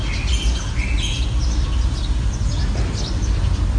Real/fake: real